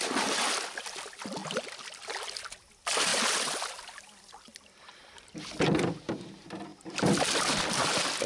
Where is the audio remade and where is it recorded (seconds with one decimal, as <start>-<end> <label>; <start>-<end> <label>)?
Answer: 0.0-1.4 recorded; 1.4-2.7 remade; 2.7-6.7 recorded; 6.7-7.6 remade; 7.6-8.3 recorded